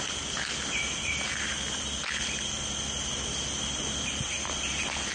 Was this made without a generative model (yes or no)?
yes